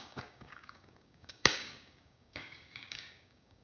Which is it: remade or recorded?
remade